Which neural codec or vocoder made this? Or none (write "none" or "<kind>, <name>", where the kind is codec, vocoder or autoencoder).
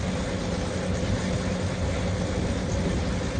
none